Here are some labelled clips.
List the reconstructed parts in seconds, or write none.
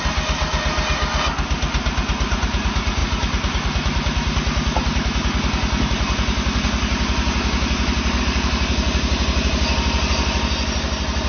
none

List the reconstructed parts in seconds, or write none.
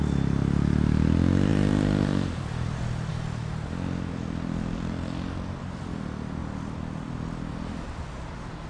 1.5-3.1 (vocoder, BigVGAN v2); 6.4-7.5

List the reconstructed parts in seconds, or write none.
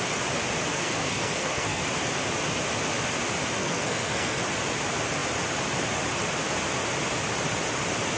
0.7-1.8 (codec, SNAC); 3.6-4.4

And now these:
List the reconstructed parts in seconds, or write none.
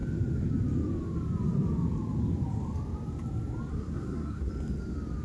3.7-4.5 (codec, SNAC)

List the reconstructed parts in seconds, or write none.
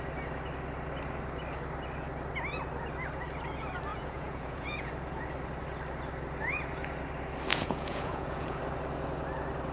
3.9-4.9 (vocoder, Vocos); 7.5-8.6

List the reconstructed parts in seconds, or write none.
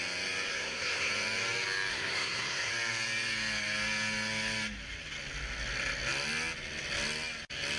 0.5-1.1 (codec, SNAC); 1.9-2.7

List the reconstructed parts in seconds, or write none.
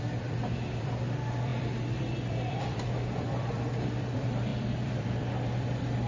0.0-6.1 (vocoder, BigVGAN v2)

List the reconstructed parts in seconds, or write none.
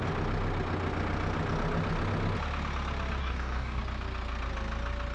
3.2-3.8 (codec, DAC)